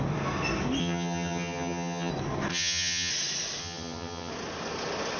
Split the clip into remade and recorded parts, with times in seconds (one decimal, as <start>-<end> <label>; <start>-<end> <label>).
0.0-0.8 recorded; 0.8-2.1 remade; 2.1-2.5 recorded; 2.5-3.1 remade; 3.1-3.6 recorded; 3.6-4.3 remade; 4.3-5.2 recorded